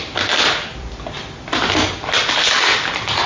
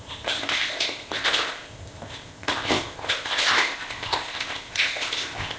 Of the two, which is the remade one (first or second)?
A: second